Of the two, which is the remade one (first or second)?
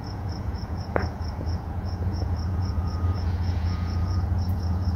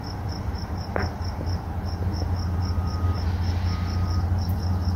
first